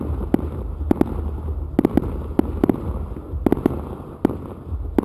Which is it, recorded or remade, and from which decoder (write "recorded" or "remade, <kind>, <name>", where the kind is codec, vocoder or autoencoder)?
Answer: recorded